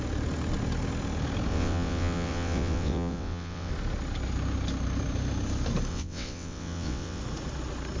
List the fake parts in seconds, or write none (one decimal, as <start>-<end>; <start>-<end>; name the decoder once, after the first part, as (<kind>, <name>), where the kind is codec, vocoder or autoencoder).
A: 1.5-3.7 (vocoder, WaveNeXt); 5.9-7.2